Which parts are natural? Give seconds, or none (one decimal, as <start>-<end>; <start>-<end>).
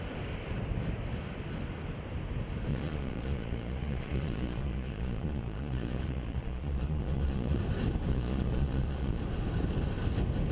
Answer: 0.0-2.7; 7.6-8.1; 9.2-10.5